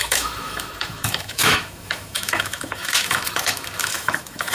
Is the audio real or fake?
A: fake